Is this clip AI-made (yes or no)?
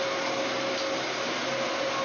no